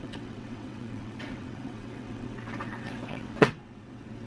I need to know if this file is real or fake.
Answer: fake